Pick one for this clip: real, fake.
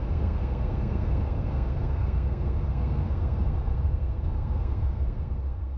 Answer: fake